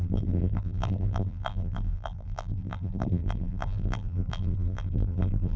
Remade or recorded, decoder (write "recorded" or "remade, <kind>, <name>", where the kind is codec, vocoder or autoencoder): remade, vocoder, BigVGAN v2